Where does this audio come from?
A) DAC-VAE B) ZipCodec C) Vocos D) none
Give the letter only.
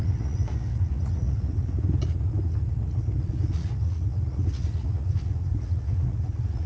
C